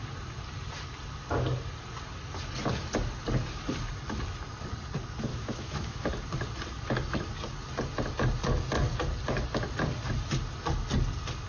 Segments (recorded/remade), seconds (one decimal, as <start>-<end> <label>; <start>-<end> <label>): 0.0-5.3 recorded; 5.3-6.1 remade; 6.1-11.5 recorded